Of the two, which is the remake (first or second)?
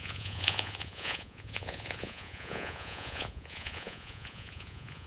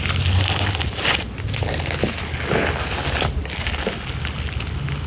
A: first